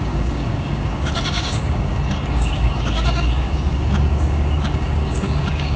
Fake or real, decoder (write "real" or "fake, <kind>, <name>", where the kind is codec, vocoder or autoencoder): fake, codec, DAC